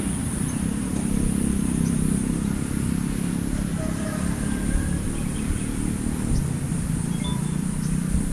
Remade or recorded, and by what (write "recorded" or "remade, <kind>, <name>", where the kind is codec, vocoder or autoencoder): remade, vocoder, BigVGAN v2